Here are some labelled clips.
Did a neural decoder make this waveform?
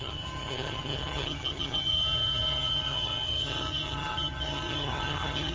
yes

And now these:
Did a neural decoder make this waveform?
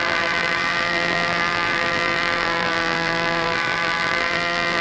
yes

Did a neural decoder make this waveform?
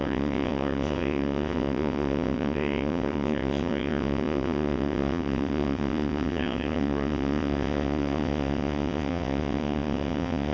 yes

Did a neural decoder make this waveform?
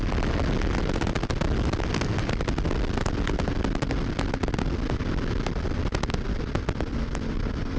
no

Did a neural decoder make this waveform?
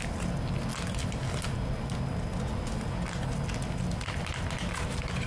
no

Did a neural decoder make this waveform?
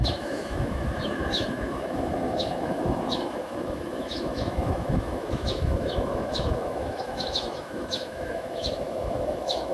yes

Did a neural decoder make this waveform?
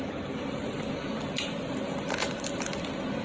no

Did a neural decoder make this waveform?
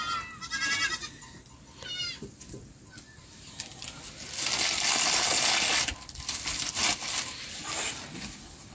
no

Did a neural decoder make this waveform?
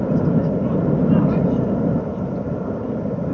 no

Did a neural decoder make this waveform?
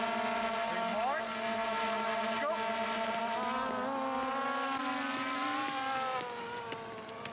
no